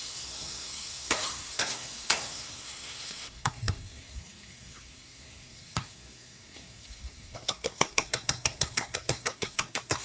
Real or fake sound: fake